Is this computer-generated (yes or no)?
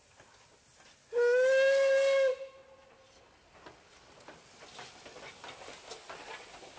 no